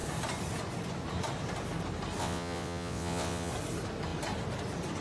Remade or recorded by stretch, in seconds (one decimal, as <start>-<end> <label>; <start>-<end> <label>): 0.0-2.2 recorded; 2.2-3.5 remade; 3.5-5.0 recorded

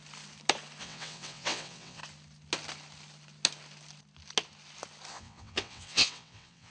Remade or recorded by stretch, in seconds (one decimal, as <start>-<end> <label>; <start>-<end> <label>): 0.0-0.8 recorded; 0.8-2.0 remade; 2.0-5.1 recorded; 5.1-6.7 remade

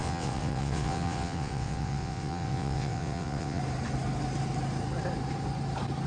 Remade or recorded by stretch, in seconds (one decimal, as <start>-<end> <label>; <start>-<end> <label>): 0.0-3.6 remade; 3.6-6.1 recorded

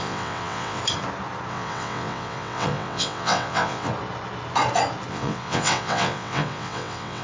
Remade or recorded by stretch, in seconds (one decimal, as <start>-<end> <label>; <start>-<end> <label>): 0.0-0.8 remade; 0.8-1.5 recorded; 1.5-3.9 remade; 3.9-5.1 recorded; 5.1-7.2 remade

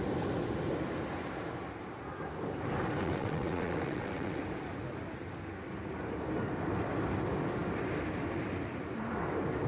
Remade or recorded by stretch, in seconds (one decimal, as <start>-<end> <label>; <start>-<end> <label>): 0.0-3.0 recorded; 3.0-4.4 remade; 4.4-9.7 recorded